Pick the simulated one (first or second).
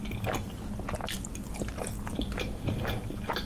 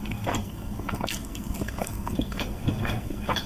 second